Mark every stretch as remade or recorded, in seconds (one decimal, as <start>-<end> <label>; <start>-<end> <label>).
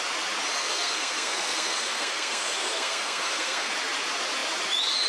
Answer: 0.0-0.6 recorded; 0.6-3.7 remade; 3.7-5.1 recorded